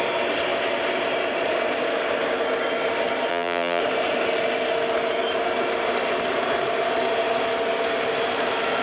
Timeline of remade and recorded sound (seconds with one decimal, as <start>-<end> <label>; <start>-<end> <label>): 0.0-3.3 recorded; 3.3-3.8 remade; 3.8-8.8 recorded